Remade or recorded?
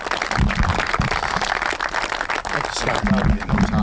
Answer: remade